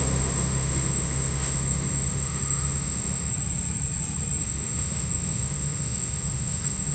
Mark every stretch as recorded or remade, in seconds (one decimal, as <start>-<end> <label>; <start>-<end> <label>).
0.0-3.3 remade; 3.3-4.4 recorded; 4.4-6.9 remade